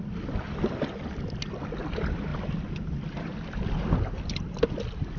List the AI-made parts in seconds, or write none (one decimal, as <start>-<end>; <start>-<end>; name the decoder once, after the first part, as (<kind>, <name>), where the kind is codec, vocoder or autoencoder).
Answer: none